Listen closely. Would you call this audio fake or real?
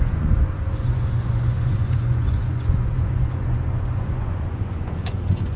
fake